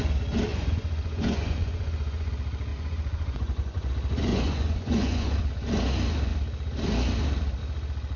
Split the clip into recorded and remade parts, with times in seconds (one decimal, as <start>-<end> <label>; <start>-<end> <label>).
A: 0.0-0.5 recorded; 0.5-2.3 remade; 2.3-2.7 recorded; 2.7-3.9 remade; 3.9-4.3 recorded; 4.3-5.4 remade; 5.4-8.2 recorded